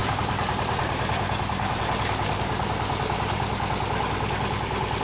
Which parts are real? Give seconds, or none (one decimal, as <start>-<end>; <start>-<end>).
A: 1.8-5.0